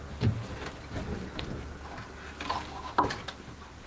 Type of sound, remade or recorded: recorded